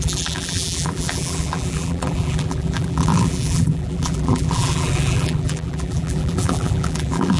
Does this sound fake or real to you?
fake